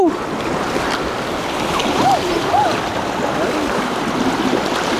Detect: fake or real real